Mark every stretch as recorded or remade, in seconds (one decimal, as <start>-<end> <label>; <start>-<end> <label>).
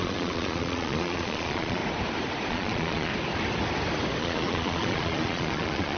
0.0-1.8 remade; 1.8-2.5 recorded; 2.5-3.1 remade; 3.1-4.2 recorded; 4.2-6.0 remade